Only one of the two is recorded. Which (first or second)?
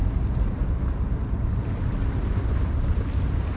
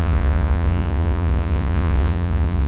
first